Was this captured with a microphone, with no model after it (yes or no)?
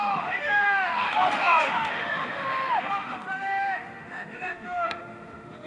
no